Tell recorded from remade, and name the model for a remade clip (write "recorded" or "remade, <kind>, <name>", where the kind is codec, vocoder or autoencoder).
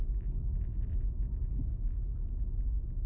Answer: recorded